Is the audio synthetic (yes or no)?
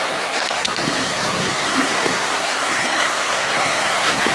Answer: yes